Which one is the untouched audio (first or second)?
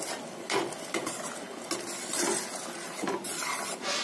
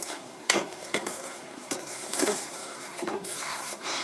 first